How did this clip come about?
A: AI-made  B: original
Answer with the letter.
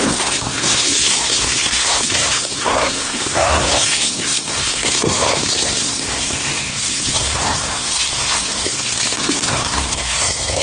A